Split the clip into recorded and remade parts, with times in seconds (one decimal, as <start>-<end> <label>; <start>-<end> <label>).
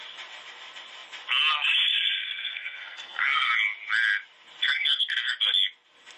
0.0-2.2 recorded; 2.2-3.5 remade; 3.5-4.7 recorded; 4.7-5.3 remade; 5.3-6.2 recorded